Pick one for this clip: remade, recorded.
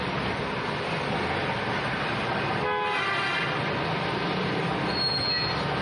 recorded